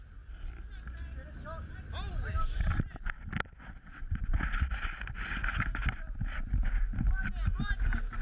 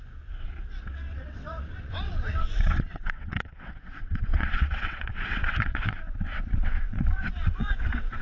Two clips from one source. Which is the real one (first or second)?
first